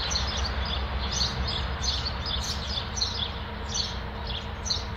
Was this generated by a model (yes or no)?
no